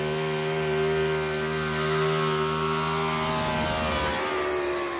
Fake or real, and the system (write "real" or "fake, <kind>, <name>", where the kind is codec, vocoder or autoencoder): real